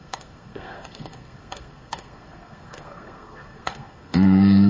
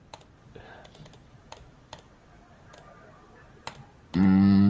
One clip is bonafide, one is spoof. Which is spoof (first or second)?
first